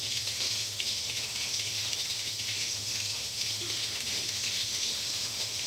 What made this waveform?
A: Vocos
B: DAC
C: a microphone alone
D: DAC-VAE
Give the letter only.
D